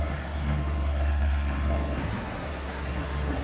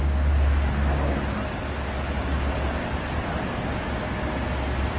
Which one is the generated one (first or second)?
first